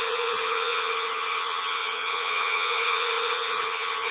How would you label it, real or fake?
fake